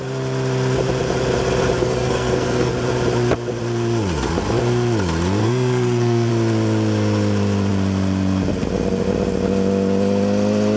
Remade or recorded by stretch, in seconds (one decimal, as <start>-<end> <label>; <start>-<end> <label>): 0.0-1.8 recorded; 1.8-2.7 remade; 2.7-5.4 recorded; 5.4-6.3 remade; 6.3-10.8 recorded